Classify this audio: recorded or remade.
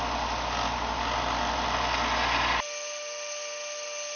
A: recorded